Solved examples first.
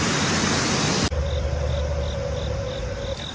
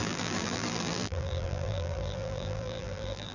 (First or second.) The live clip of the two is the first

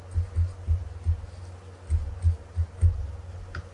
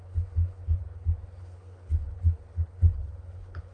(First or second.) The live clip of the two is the first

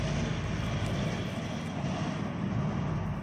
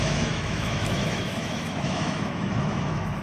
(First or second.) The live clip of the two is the first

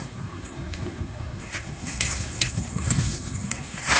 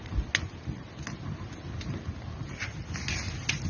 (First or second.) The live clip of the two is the second